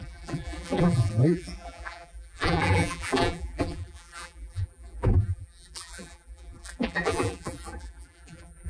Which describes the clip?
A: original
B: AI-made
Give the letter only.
B